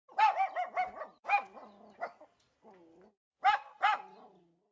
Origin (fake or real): real